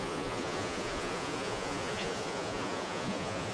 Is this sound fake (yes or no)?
yes